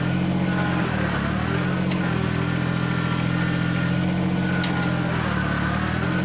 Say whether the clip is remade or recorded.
recorded